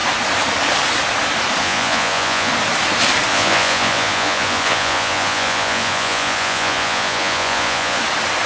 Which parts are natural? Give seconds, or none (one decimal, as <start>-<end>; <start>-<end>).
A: 0.0-1.6; 2.5-3.3; 8.0-8.5